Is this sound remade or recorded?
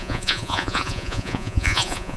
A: remade